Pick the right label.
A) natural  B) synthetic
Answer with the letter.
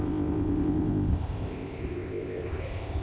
B